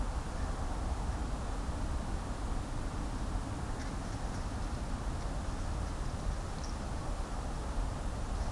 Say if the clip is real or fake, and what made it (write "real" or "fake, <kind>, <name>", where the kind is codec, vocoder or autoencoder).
real